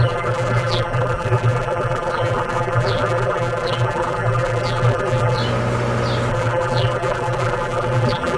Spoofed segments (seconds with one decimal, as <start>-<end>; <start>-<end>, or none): 0.0-5.4; 6.3-8.4